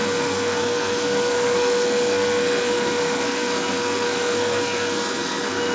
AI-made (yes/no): yes